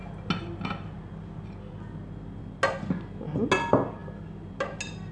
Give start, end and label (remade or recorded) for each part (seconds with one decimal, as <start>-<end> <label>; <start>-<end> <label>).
0.0-5.1 recorded